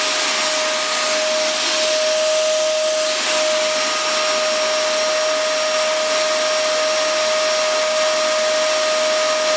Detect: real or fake real